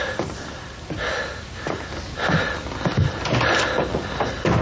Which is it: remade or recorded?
recorded